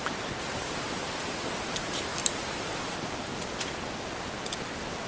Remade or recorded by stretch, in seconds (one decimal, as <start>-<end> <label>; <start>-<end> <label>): 0.0-3.3 remade; 3.3-5.1 recorded